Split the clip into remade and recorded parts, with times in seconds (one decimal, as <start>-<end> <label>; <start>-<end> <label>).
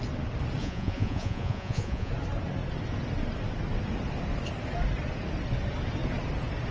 0.0-0.6 recorded; 0.6-2.1 remade; 2.1-6.7 recorded